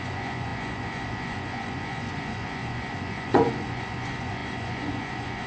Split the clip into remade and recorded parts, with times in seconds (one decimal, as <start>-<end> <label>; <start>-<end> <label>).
0.0-5.5 remade